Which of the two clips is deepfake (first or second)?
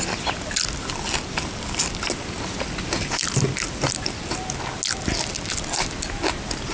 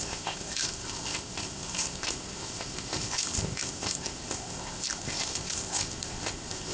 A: second